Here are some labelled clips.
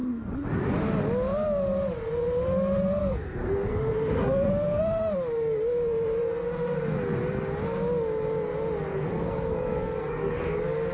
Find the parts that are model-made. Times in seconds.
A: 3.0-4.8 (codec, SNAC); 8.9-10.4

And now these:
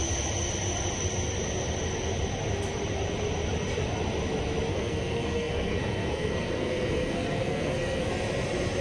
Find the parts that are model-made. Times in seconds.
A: 4.7-8.1 (codec, SNAC)

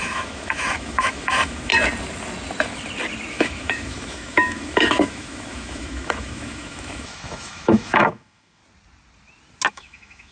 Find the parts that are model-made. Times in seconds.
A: 0.0-1.7 (autoencoder, DAC-VAE); 3.3-8.6; 9.7-10.3

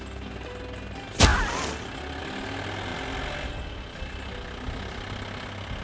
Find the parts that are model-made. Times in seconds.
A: none

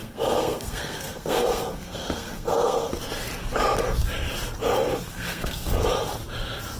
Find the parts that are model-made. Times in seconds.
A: 0.0-3.0 (codec, SNAC); 5.1-5.9

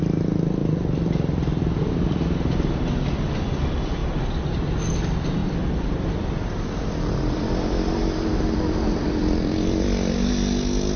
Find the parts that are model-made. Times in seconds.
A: 0.6-2.7 (vocoder, BigVGAN v2); 5.4-10.3

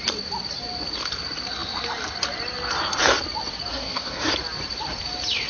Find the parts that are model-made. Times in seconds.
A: 3.7-4.3 (codec, SNAC)